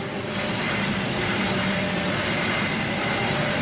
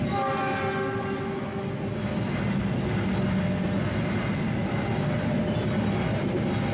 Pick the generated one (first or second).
first